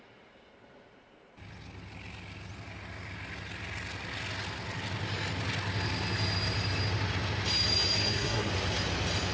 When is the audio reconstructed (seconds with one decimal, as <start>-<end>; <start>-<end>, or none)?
8.0-8.5